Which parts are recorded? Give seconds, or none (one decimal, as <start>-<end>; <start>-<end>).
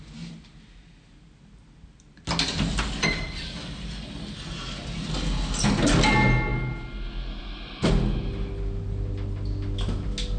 0.0-10.4